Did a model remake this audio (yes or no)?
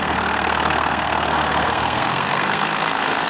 yes